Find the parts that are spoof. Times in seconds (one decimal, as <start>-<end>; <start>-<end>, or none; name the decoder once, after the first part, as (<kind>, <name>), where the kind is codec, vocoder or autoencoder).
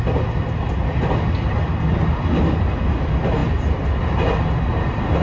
none